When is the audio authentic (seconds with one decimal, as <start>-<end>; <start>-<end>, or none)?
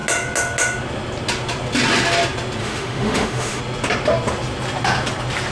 0.0-2.6; 3.6-5.5